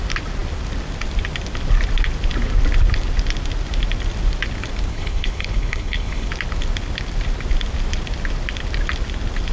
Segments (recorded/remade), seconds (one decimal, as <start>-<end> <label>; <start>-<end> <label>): 0.0-4.9 recorded; 4.9-6.3 remade; 6.3-9.5 recorded